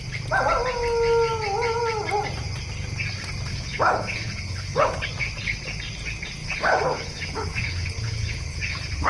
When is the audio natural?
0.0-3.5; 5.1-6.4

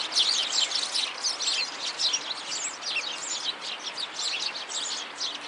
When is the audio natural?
0.0-5.5

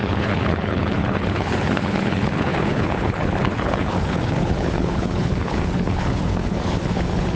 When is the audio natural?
none

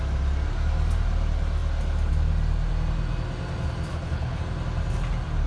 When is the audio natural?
0.0-3.9; 4.4-5.5

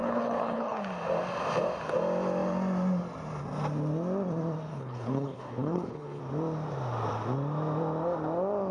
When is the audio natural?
0.8-4.7; 6.2-8.7

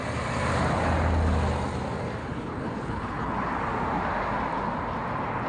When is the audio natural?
0.0-2.2; 3.3-5.5

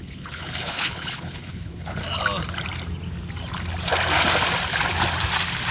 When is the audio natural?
2.0-5.7

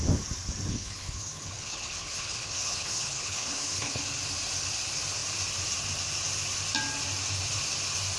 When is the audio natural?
0.0-0.7; 4.0-8.2